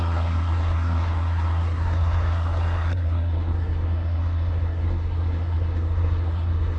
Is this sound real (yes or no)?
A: no